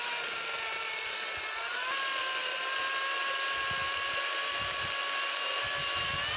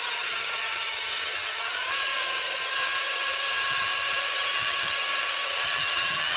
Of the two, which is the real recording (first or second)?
first